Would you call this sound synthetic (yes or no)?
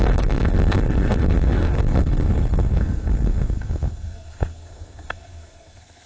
yes